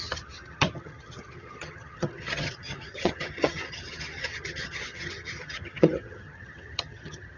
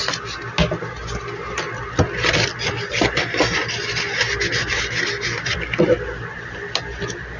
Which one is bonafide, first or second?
second